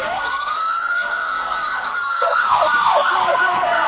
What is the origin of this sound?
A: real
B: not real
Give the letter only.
B